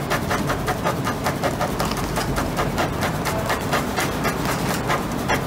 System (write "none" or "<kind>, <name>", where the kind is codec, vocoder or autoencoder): none